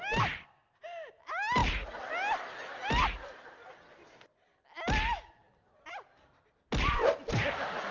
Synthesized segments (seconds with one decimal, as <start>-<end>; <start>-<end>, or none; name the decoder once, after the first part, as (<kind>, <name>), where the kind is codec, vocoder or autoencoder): none

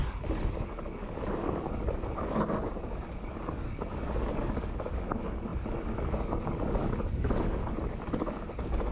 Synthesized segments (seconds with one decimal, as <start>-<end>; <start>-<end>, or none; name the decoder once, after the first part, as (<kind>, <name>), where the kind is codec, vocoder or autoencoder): 0.0-8.9 (codec, DAC)

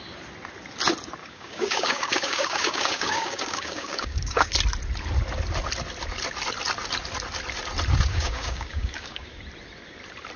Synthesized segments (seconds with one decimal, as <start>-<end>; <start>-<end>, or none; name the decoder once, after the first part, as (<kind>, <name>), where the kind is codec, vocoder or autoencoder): 1.2-4.5 (codec, DAC); 8.1-9.4